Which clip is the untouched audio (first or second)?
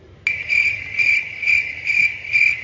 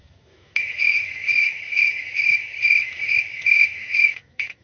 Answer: first